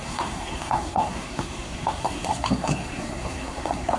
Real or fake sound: fake